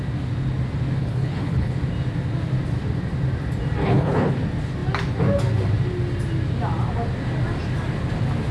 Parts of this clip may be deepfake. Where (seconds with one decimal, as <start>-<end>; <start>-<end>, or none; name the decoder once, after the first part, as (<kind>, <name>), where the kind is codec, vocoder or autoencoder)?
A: 1.0-1.7 (codec, HILCodec); 3.8-4.3